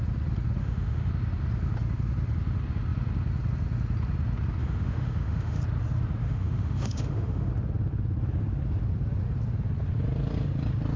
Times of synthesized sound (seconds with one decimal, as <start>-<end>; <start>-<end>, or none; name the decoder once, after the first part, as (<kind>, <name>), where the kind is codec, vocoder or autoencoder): 0.6-1.1 (autoencoder, DAC-VAE); 4.6-5.6; 6.2-7.5